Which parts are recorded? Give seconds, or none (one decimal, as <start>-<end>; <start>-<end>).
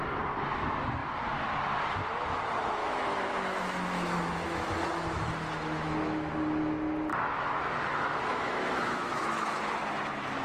0.0-2.8; 6.3-7.1; 9.6-10.4